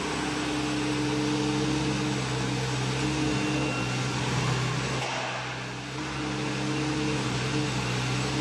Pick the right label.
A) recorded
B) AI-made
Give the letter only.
A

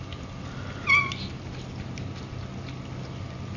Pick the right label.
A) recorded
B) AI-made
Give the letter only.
A